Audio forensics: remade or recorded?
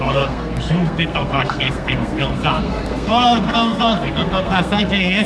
remade